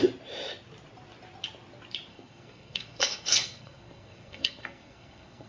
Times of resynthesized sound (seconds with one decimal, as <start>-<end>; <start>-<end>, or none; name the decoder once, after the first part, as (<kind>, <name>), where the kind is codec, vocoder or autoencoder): 2.1-5.5 (codec, SNAC)